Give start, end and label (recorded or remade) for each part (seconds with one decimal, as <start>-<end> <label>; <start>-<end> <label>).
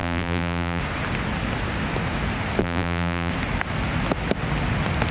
0.0-0.8 remade; 0.8-2.6 recorded; 2.6-3.3 remade; 3.3-5.1 recorded